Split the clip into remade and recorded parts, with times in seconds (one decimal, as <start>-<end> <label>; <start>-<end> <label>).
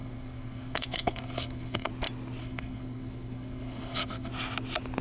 0.0-1.9 remade; 1.9-2.4 recorded; 2.4-4.3 remade; 4.3-5.0 recorded